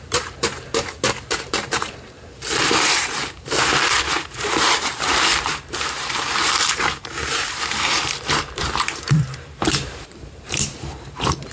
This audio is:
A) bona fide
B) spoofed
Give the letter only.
B